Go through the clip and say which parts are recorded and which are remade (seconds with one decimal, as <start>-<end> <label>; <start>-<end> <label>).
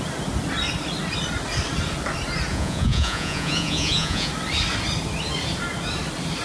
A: 0.0-2.5 recorded; 2.5-4.3 remade; 4.3-6.4 recorded